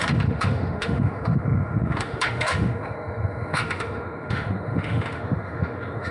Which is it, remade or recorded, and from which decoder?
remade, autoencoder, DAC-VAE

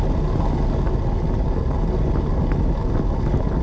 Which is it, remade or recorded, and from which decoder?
recorded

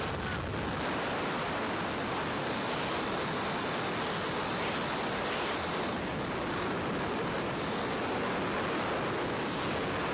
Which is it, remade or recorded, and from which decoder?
recorded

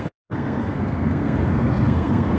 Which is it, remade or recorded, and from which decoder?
remade, codec, SNAC